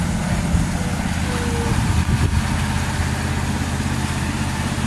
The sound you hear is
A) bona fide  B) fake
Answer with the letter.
A